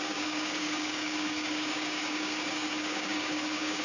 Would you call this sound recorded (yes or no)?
no